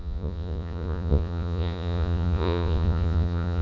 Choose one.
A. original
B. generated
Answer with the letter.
B